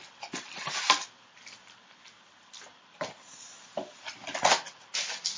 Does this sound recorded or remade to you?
recorded